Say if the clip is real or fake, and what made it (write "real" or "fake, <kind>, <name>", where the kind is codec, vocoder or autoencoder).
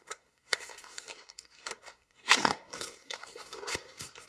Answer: fake, codec, SNAC